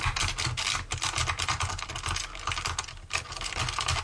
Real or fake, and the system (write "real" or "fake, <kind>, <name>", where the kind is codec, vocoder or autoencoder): real